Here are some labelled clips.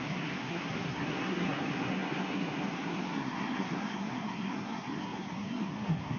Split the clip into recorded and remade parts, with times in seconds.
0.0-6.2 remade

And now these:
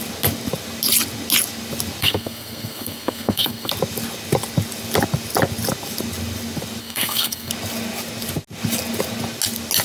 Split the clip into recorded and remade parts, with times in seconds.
0.0-2.0 recorded; 2.0-3.7 remade; 3.7-6.8 recorded; 6.8-7.5 remade; 7.5-9.8 recorded

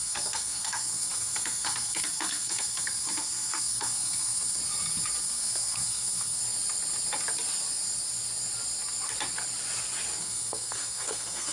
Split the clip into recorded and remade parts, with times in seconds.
0.0-4.6 remade; 4.6-5.2 recorded; 5.2-6.4 remade; 6.4-10.2 recorded; 10.2-11.5 remade

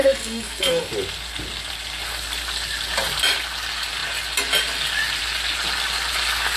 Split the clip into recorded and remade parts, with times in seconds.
0.0-0.9 remade; 0.9-6.6 recorded

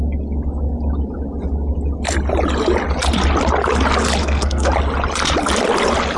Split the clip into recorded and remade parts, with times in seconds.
0.0-4.2 recorded; 4.2-4.7 remade; 4.7-6.2 recorded

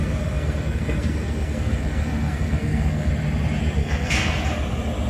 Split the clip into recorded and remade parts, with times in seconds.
0.0-3.1 remade; 3.1-3.8 recorded; 3.8-4.3 remade; 4.3-5.1 recorded